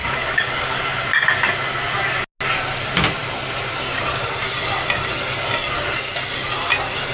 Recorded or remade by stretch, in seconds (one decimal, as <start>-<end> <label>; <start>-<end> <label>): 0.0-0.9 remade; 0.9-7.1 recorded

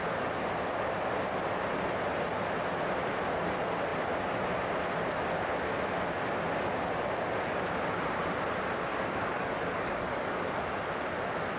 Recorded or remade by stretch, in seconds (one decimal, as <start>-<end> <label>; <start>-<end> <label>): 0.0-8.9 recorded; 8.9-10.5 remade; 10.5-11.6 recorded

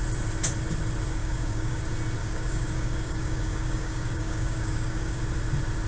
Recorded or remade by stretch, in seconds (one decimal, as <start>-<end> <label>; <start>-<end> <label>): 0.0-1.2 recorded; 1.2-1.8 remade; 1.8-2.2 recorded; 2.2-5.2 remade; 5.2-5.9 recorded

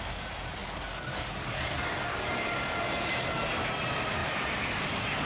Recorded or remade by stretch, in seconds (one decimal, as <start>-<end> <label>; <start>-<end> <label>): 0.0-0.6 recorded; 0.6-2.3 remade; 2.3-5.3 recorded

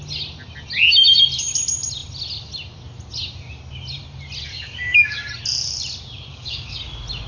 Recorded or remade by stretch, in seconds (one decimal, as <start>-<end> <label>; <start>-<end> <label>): 0.0-4.5 recorded; 4.5-5.3 remade; 5.3-6.3 recorded; 6.3-6.8 remade; 6.8-7.3 recorded

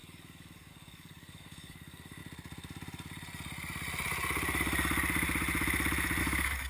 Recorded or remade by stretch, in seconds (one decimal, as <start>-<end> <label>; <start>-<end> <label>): 0.0-2.2 remade; 2.2-6.2 recorded; 6.2-6.7 remade

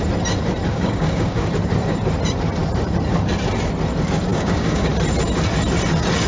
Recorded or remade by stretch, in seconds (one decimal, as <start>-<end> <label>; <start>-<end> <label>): 0.0-0.7 recorded; 0.7-1.5 remade; 1.5-4.3 recorded; 4.3-4.9 remade; 4.9-6.3 recorded

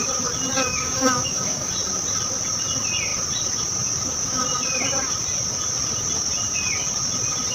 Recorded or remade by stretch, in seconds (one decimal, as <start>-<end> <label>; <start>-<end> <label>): 0.0-0.7 recorded; 0.7-1.7 remade; 1.7-7.5 recorded